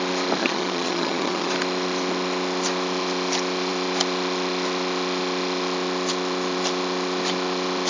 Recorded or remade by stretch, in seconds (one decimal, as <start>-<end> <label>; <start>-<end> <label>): 0.0-0.4 recorded; 0.4-1.5 remade; 1.5-7.9 recorded